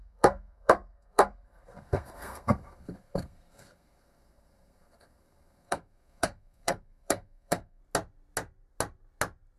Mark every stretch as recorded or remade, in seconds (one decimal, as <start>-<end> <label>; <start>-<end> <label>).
0.0-7.8 remade; 7.8-9.6 recorded